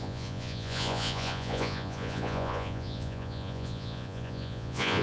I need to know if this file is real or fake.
fake